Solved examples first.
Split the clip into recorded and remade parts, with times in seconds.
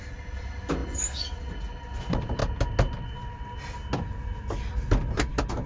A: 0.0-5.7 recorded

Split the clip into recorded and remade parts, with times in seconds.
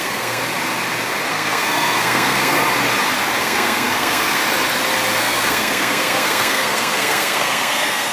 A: 0.0-0.4 remade; 0.4-1.3 recorded; 1.3-2.6 remade; 2.6-3.4 recorded; 3.4-4.4 remade; 4.4-5.2 recorded; 5.2-8.1 remade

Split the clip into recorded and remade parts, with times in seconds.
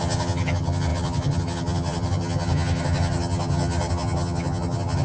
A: 0.0-5.0 remade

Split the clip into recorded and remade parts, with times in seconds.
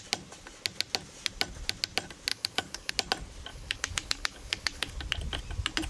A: 0.0-2.3 recorded; 2.3-2.9 remade; 2.9-3.5 recorded; 3.5-4.9 remade; 4.9-5.9 recorded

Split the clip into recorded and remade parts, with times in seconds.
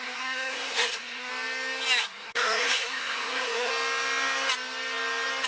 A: 0.0-1.3 remade; 1.3-2.0 recorded; 2.0-3.7 remade; 3.7-5.5 recorded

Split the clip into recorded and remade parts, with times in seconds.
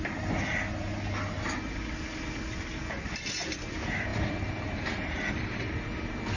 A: 0.0-6.4 recorded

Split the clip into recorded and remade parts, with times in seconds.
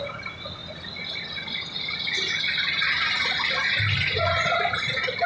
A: 0.0-5.3 recorded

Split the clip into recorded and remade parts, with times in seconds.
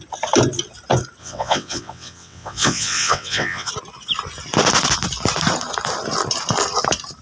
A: 0.0-1.2 recorded; 1.2-3.7 remade; 3.7-7.2 recorded